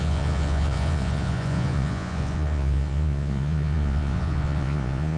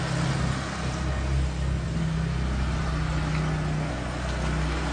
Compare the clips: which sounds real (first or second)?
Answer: second